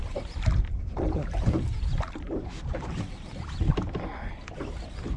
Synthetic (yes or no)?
no